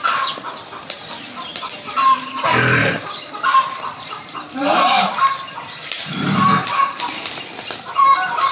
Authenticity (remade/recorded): remade